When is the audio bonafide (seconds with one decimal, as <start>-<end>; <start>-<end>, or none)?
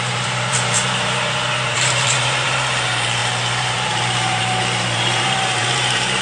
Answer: none